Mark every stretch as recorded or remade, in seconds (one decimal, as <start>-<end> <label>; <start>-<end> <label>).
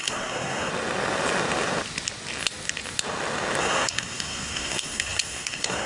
0.0-0.7 remade; 0.7-3.6 recorded; 3.6-5.9 remade